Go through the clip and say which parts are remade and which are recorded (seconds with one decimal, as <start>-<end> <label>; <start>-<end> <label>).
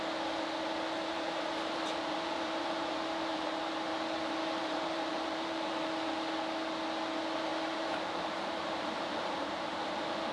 0.0-1.1 recorded; 1.1-3.7 remade; 3.7-4.6 recorded; 4.6-5.7 remade; 5.7-7.5 recorded; 7.5-10.3 remade